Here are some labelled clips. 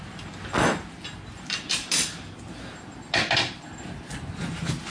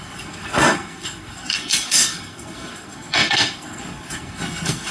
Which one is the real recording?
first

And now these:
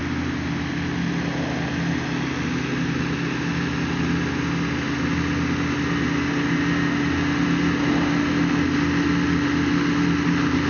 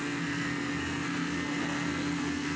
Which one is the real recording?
first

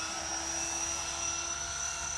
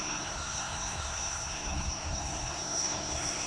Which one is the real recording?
first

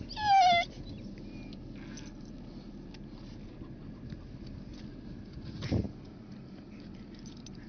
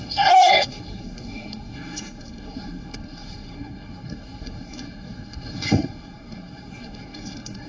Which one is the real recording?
first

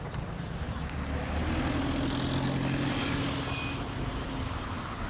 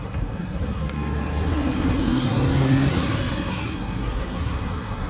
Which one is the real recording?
first